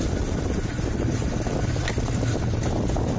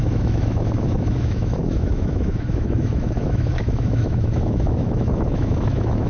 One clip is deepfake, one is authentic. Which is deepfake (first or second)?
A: second